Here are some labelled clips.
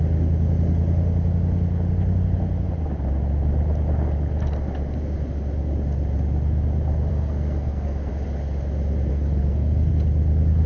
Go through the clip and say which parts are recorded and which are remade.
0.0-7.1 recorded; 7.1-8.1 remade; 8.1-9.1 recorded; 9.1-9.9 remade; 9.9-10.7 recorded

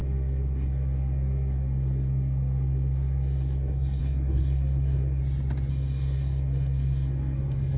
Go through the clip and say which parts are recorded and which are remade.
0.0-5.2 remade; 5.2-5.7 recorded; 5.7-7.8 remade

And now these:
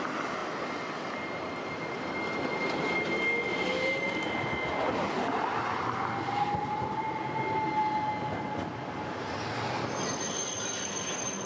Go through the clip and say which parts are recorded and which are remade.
0.0-11.5 recorded